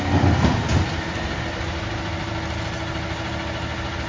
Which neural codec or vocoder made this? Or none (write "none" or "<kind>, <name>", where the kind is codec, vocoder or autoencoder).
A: none